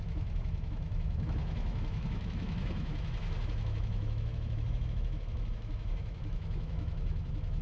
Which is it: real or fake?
fake